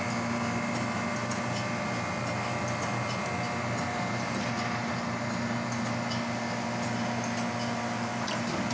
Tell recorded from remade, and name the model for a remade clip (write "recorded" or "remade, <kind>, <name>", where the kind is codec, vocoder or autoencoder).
recorded